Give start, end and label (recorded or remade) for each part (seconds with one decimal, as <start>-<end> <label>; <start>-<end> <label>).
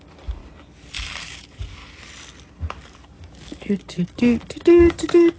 0.0-0.4 remade; 0.4-1.2 recorded; 1.2-1.8 remade; 1.8-2.5 recorded; 2.5-5.4 remade